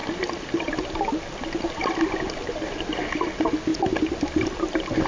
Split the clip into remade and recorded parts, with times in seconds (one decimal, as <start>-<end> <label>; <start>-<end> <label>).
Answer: 0.0-3.7 recorded; 3.7-4.2 remade; 4.2-5.1 recorded